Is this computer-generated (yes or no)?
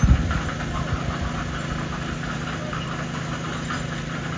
no